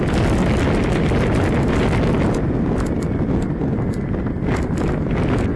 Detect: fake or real real